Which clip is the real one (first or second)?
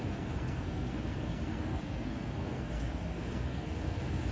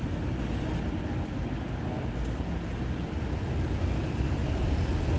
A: second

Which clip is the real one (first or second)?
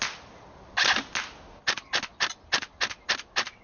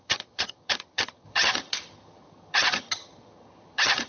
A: first